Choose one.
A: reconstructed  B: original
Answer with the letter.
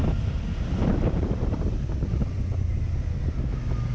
B